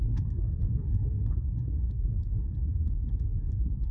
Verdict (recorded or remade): remade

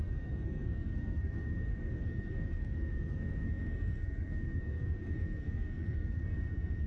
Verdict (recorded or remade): remade